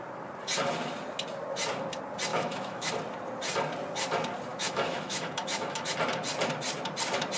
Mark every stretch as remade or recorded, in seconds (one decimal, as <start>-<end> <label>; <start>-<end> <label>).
0.0-2.3 recorded; 2.3-2.9 remade; 2.9-4.5 recorded; 4.5-5.9 remade; 5.9-7.4 recorded

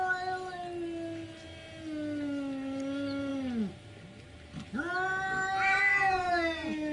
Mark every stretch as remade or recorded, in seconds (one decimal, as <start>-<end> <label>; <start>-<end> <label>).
0.0-6.9 recorded

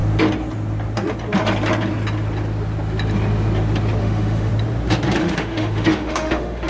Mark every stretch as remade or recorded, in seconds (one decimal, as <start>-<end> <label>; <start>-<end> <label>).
0.0-4.0 recorded; 4.0-4.5 remade; 4.5-5.2 recorded; 5.2-6.7 remade

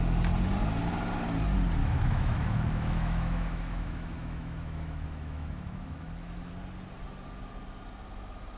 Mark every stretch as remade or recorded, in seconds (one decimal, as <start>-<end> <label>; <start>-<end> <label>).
0.0-1.8 recorded; 1.8-6.5 remade; 6.5-8.6 recorded